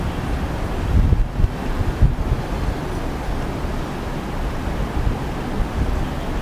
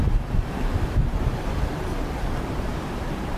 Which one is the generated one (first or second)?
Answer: second